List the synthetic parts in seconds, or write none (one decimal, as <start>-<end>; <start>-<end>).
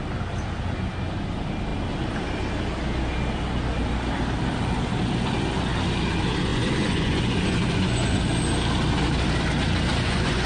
6.5-8.2; 9.9-10.5